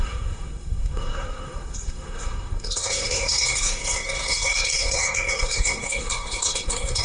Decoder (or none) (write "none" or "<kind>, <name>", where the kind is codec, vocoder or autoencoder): codec, SNAC